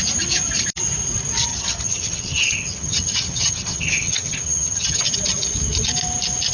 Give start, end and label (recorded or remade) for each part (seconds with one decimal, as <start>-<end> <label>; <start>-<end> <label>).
0.0-1.5 recorded; 1.5-5.0 remade; 5.0-6.5 recorded